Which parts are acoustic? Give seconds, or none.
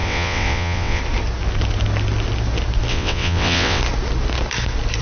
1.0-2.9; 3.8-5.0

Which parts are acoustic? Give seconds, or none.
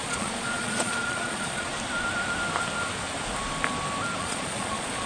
1.7-4.2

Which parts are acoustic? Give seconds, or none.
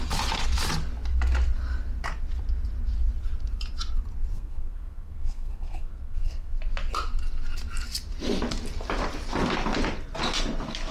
0.0-4.3; 6.6-10.9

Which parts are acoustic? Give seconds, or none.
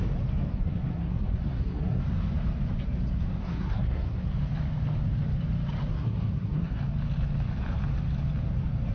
0.0-0.5; 2.0-3.4; 4.2-5.9; 6.8-8.9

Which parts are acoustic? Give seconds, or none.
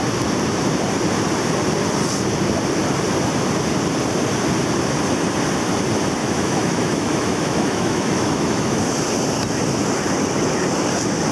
0.0-6.2; 8.8-11.3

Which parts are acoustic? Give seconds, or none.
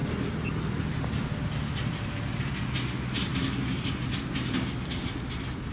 0.0-5.7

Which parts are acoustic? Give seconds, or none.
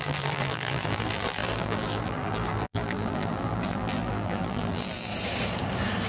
5.1-6.1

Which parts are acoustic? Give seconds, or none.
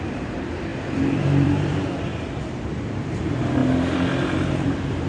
2.1-2.7; 3.6-4.5